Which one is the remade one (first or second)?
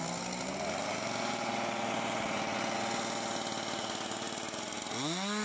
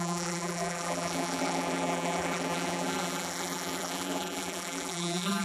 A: second